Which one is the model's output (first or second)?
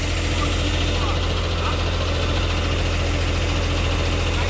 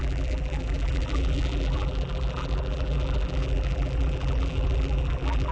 second